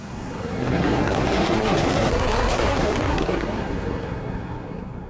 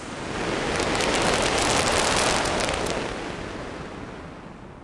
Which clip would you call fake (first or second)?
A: first